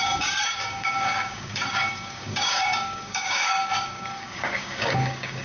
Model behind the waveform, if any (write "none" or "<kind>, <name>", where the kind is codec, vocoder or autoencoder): codec, DAC